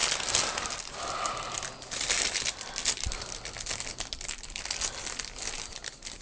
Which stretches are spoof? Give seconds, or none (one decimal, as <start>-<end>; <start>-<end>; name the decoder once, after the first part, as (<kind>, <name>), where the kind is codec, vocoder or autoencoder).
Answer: none